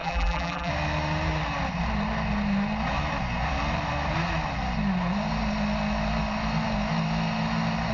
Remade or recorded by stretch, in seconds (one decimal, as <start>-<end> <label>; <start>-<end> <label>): 0.0-0.7 remade; 0.7-7.9 recorded

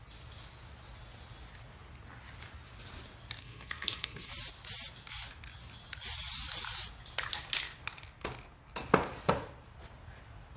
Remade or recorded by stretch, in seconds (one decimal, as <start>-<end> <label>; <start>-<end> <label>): 0.0-3.4 recorded; 3.4-4.3 remade; 4.3-10.6 recorded

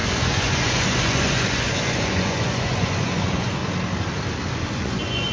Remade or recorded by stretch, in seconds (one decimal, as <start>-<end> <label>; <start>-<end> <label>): 0.0-3.6 remade; 3.6-4.6 recorded; 4.6-5.3 remade

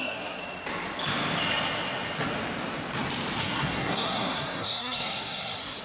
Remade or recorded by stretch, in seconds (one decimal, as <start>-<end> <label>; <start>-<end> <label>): 0.0-0.4 remade; 0.4-3.4 recorded; 3.4-5.8 remade

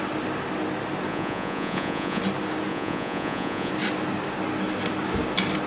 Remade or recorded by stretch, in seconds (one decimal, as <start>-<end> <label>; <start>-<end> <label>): 0.0-1.1 recorded; 1.1-2.2 remade; 2.2-2.7 recorded; 2.7-3.7 remade; 3.7-5.7 recorded

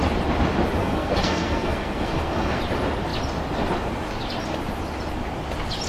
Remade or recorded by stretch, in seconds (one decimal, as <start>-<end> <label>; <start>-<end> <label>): 0.0-0.8 recorded; 0.8-2.6 remade; 2.6-5.9 recorded

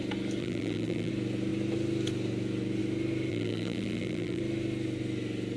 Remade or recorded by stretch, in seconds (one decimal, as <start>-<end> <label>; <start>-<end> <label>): 0.0-0.4 recorded; 0.4-1.1 remade; 1.1-3.3 recorded; 3.3-4.4 remade; 4.4-5.6 recorded